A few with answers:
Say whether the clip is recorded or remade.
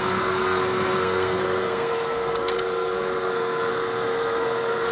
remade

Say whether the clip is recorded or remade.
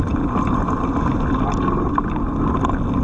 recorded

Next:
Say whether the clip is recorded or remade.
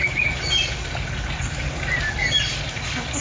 recorded